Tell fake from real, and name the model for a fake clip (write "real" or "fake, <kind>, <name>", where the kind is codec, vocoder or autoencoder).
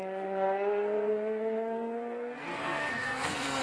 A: fake, codec, SNAC